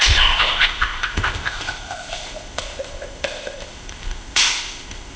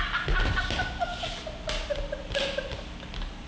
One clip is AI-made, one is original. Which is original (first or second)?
second